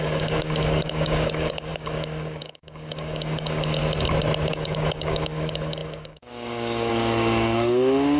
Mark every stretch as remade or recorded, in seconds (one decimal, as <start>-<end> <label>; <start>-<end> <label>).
0.0-3.8 remade; 3.8-4.5 recorded; 4.5-8.2 remade